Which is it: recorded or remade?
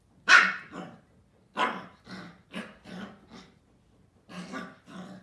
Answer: recorded